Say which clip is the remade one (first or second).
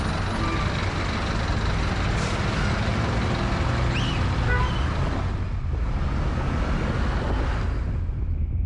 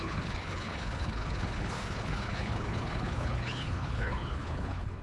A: second